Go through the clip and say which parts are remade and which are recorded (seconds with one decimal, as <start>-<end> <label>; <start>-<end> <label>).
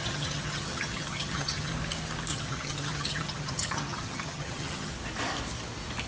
0.0-1.7 remade; 1.7-2.3 recorded; 2.3-4.9 remade; 4.9-6.1 recorded